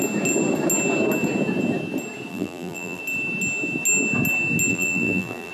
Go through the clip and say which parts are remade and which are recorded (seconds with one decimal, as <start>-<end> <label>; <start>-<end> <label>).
0.0-2.3 recorded; 2.3-3.0 remade; 3.0-4.7 recorded; 4.7-5.5 remade